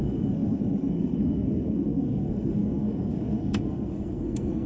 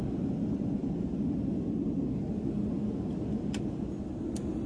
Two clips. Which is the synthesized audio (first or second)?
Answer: first